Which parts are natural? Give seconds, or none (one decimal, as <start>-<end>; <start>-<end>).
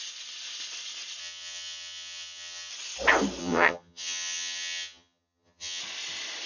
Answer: 0.0-1.2; 2.7-3.4; 5.8-6.5